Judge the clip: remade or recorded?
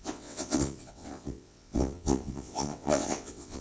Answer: remade